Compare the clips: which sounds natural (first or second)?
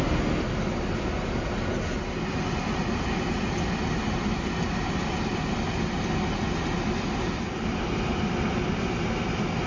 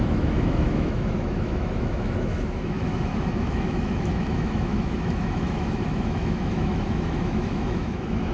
first